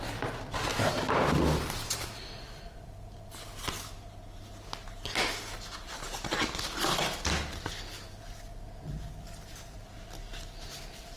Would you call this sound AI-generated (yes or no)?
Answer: no